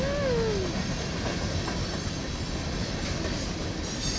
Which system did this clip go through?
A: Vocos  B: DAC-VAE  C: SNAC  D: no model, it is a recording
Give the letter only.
D